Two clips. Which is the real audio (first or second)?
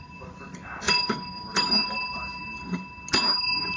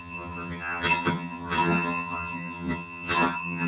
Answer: first